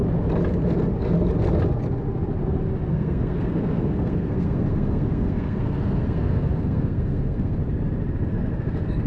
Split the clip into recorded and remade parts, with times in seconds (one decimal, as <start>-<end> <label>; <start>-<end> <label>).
0.0-2.9 recorded; 2.9-7.6 remade; 7.6-8.3 recorded; 8.3-9.1 remade